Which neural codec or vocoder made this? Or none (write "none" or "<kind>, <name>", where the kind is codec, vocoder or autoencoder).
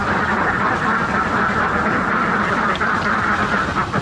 none